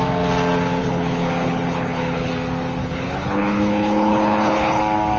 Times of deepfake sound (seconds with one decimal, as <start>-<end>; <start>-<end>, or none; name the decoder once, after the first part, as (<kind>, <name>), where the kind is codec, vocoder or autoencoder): 0.8-2.3 (codec, HILCodec); 2.8-4.8